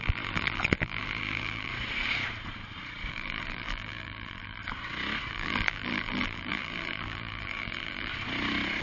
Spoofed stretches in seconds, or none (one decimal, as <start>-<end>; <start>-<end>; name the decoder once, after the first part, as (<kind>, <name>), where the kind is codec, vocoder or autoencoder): 0.0-1.7 (vocoder, BigVGAN v2); 3.1-4.6; 5.3-8.1